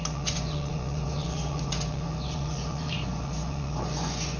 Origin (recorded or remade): remade